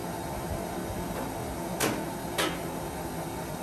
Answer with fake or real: real